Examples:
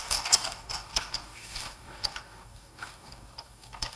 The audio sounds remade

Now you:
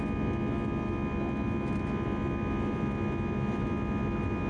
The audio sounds recorded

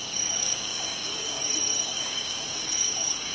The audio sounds remade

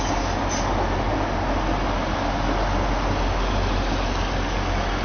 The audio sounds recorded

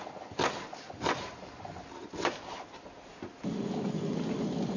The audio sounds recorded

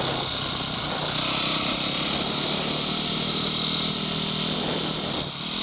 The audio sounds recorded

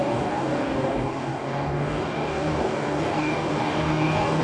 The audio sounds remade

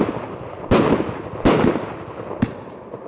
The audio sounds recorded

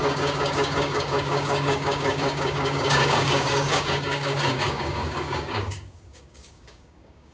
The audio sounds remade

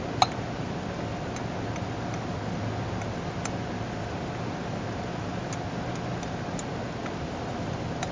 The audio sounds recorded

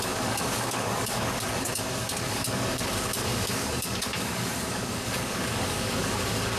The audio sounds remade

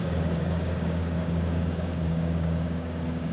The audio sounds remade